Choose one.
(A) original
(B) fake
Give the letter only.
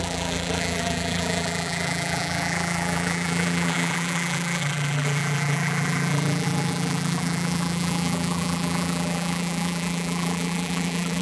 B